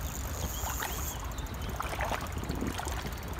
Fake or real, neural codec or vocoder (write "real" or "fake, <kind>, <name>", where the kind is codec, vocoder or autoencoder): real